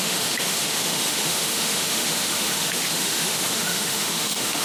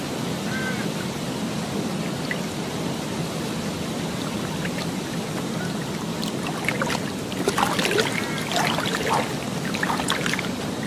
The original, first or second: second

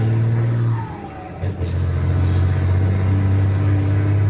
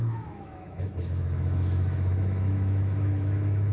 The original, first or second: first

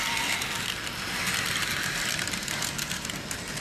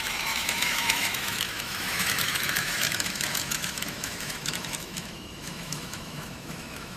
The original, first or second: first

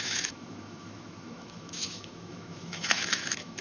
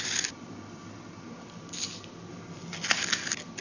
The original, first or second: second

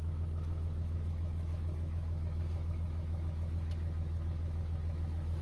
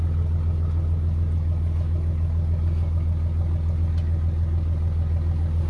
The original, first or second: second